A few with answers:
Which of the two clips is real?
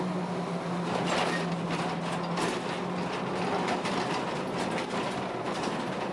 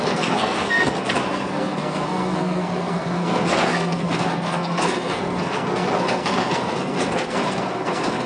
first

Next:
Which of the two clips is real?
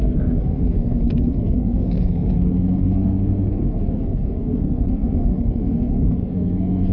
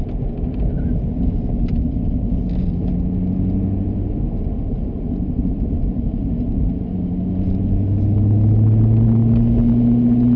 second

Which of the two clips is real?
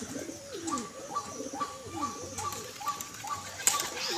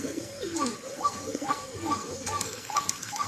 first